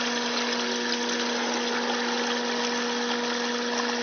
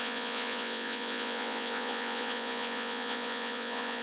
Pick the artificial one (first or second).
second